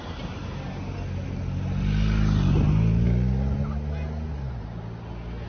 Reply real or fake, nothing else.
real